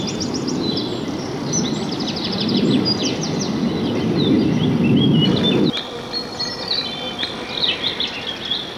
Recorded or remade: recorded